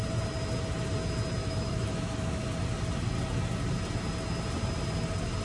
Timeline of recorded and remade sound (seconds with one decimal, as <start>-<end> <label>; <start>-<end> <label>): 0.0-1.4 recorded; 1.4-2.4 remade; 2.4-5.4 recorded